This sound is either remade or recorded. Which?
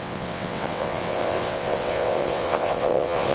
remade